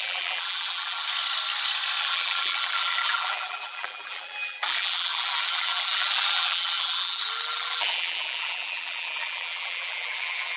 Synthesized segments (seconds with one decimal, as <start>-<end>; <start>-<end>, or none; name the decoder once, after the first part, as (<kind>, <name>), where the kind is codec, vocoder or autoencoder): 0.0-1.0 (vocoder, BigVGAN v2); 2.0-10.6